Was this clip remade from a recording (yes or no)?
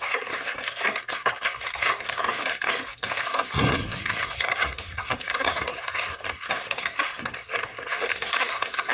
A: yes